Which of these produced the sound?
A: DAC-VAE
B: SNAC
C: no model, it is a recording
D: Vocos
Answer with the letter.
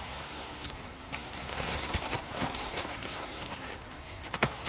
B